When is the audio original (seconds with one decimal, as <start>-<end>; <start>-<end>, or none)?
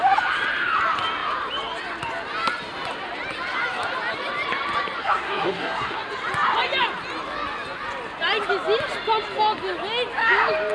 0.0-5.0; 6.0-10.7